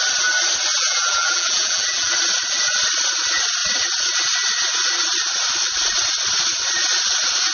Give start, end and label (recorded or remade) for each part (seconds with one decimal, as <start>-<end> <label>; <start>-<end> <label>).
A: 0.0-0.7 recorded; 0.7-2.1 remade; 2.1-7.5 recorded